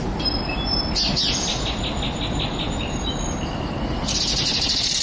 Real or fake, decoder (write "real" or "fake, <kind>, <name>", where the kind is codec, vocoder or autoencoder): real